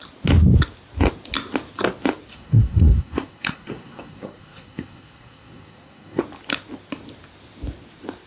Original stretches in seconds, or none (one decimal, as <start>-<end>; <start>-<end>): 0.0-2.3; 6.2-8.3